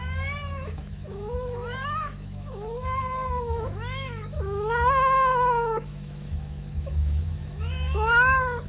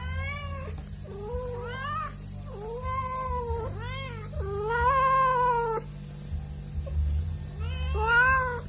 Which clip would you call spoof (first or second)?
first